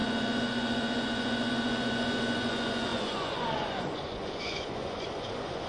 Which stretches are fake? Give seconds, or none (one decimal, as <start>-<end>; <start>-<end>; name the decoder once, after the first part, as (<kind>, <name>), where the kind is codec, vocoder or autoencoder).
0.0-5.7 (vocoder, Vocos)